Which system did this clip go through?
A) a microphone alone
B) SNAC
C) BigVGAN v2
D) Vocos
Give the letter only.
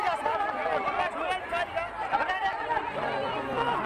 A